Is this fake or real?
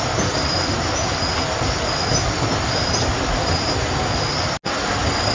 real